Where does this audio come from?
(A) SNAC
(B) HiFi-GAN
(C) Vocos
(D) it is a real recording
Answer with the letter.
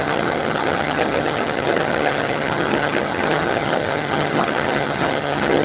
B